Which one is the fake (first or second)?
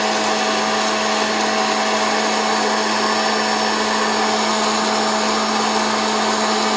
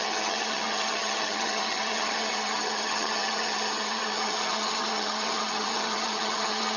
second